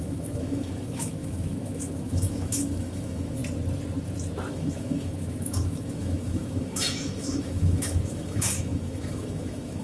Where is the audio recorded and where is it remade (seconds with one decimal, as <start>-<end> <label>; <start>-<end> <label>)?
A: 0.0-3.4 remade; 3.4-4.5 recorded; 4.5-9.8 remade